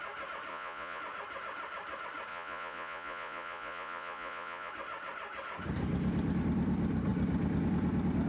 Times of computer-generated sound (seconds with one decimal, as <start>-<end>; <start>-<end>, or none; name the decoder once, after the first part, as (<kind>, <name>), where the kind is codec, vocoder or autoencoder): 0.5-1.0 (vocoder, Vocos); 2.3-4.7